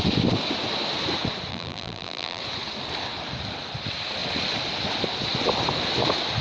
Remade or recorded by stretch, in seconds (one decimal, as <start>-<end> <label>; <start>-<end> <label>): 0.0-1.5 recorded; 1.5-2.4 remade; 2.4-6.4 recorded